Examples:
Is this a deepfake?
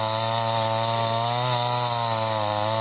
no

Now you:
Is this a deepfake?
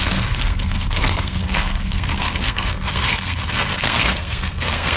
yes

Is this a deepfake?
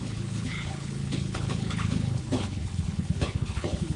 yes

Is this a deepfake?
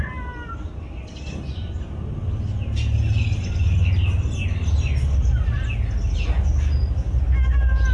no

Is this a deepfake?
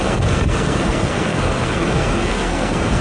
yes